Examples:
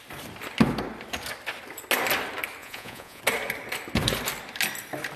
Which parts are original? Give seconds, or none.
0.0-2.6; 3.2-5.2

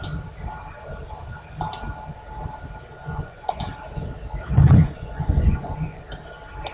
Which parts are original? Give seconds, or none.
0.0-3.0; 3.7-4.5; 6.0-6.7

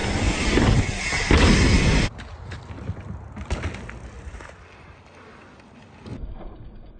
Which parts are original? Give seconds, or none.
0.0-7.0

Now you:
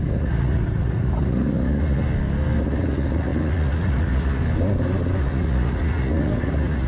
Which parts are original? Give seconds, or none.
2.0-2.6; 4.4-5.2